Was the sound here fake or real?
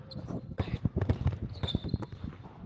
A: fake